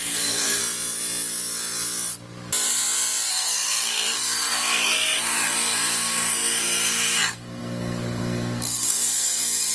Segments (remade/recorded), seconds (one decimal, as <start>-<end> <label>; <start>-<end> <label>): 0.0-0.6 remade; 0.6-3.3 recorded; 3.3-9.7 remade